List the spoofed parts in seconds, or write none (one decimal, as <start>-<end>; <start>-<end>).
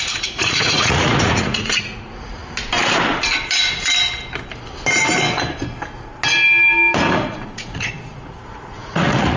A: 0.0-2.4; 7.1-9.4